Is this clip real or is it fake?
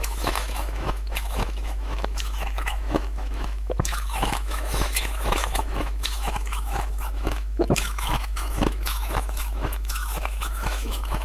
fake